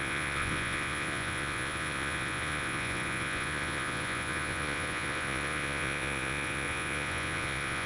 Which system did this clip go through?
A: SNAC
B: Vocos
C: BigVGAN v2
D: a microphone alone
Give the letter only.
B